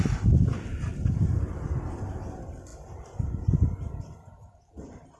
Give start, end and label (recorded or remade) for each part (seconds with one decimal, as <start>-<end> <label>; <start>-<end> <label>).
0.0-5.2 recorded